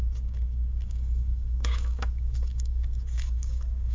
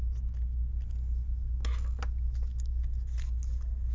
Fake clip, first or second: first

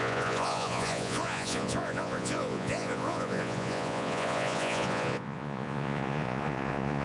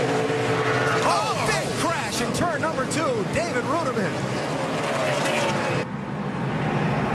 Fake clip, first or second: first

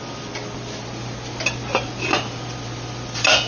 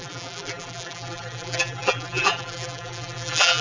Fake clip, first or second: second